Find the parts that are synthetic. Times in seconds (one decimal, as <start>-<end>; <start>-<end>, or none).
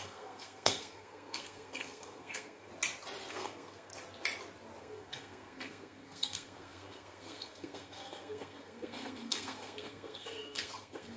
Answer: 0.0-2.7; 3.3-3.9; 4.8-11.2